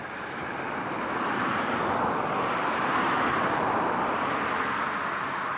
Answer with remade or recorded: recorded